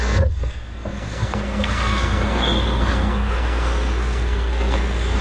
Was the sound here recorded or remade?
remade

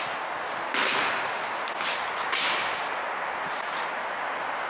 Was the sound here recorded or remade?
recorded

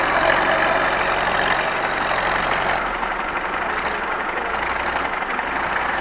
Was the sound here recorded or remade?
recorded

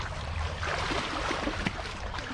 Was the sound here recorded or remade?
remade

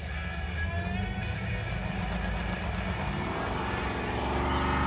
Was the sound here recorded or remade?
recorded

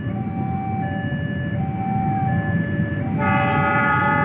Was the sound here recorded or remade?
recorded